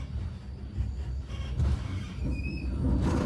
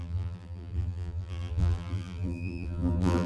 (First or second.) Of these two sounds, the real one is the first